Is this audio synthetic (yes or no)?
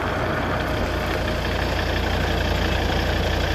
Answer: no